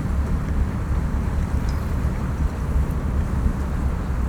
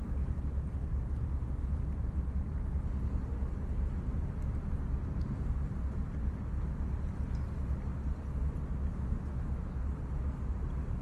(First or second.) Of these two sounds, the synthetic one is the first